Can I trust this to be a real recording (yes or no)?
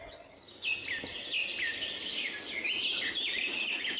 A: yes